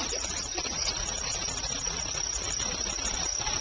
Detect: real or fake fake